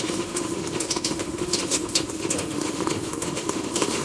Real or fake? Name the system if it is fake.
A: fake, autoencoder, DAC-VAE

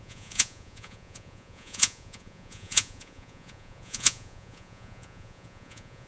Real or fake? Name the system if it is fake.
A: fake, vocoder, Vocos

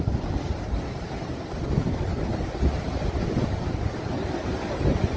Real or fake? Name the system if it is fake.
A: real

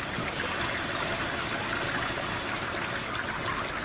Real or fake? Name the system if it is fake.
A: real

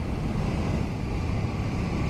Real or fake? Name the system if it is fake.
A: real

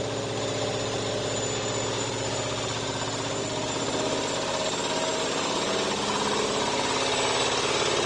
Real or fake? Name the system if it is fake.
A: real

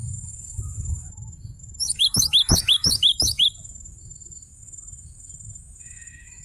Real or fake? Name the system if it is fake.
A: fake, autoencoder, DAC-VAE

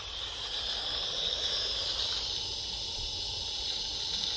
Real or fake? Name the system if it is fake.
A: real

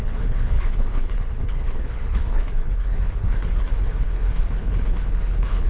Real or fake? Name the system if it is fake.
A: fake, codec, HILCodec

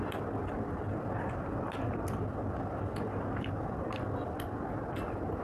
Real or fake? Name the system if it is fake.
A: real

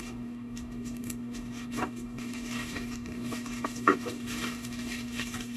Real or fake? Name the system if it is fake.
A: fake, codec, DAC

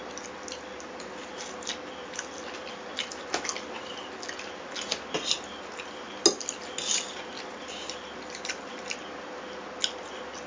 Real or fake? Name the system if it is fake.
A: real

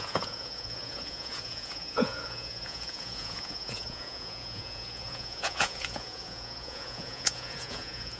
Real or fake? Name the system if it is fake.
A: fake, vocoder, Vocos